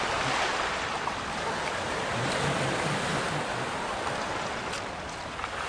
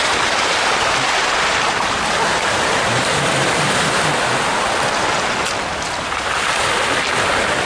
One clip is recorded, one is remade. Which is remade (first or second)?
first